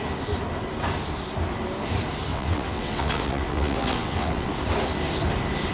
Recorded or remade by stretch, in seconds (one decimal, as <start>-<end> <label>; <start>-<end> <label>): 0.0-2.3 recorded; 2.3-4.5 remade; 4.5-5.7 recorded